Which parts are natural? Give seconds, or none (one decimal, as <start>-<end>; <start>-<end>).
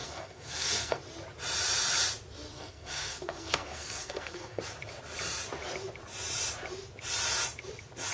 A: 1.0-2.5; 4.6-8.1